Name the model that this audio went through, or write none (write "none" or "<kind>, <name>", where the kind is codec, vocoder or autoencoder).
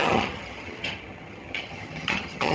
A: vocoder, HiFi-GAN